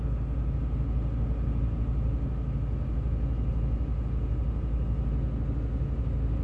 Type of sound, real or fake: real